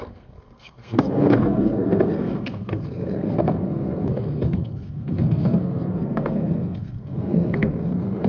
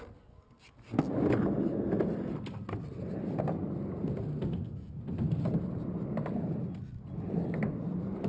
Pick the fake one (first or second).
first